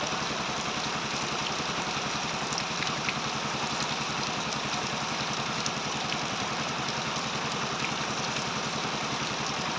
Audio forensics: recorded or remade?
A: remade